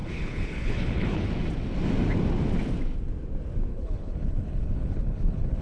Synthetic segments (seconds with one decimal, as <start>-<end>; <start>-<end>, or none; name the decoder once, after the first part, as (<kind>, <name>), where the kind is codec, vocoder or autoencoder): 0.0-1.3 (codec, HILCodec); 3.7-5.6